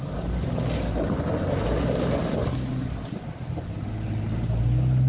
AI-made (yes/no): no